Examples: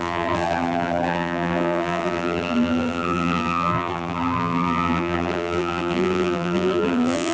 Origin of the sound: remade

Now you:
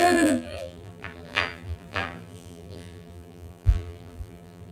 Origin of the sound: remade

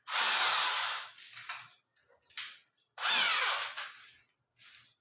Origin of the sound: recorded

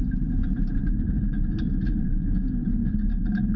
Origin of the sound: remade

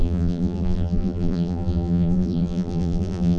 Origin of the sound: remade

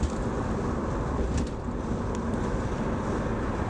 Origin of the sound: recorded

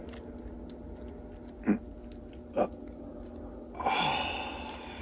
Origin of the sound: recorded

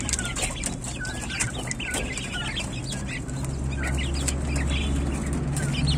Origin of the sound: recorded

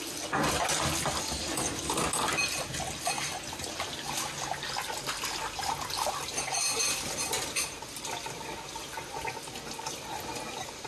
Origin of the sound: recorded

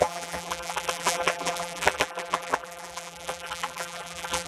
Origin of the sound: remade